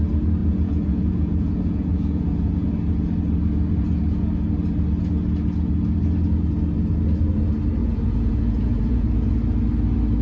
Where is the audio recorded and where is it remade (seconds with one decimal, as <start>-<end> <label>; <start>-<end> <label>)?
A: 0.0-0.4 recorded; 0.4-2.7 remade; 2.7-7.8 recorded; 7.8-9.3 remade; 9.3-10.2 recorded